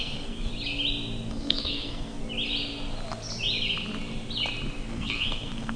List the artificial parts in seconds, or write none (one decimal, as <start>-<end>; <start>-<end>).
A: 0.0-0.5; 1.3-2.2; 4.9-5.8